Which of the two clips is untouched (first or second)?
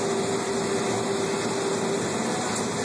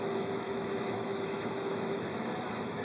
first